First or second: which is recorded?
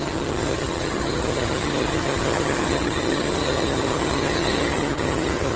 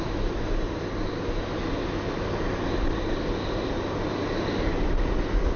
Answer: second